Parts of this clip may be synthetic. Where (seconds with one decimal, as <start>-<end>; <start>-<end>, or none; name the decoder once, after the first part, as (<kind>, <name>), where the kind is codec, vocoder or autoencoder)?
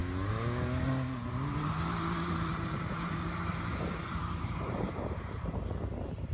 2.5-5.6 (vocoder, BigVGAN v2)